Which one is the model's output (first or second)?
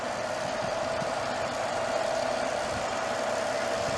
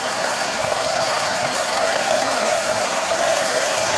second